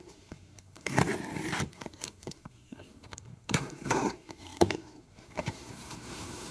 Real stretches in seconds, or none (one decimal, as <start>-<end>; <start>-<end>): 1.0-1.7

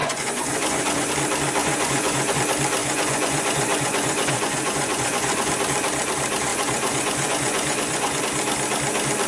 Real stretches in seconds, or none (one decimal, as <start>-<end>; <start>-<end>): 1.1-1.6; 2.4-2.8; 5.5-6.5; 8.2-9.3

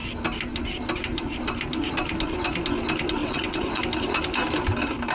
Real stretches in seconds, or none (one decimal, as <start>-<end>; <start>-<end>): 0.0-3.2; 3.8-5.1

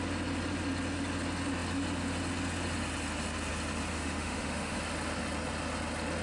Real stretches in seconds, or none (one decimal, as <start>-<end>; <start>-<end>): 0.0-3.9; 4.8-6.2

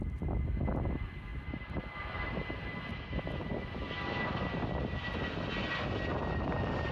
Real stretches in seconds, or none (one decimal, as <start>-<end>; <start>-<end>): 0.0-6.9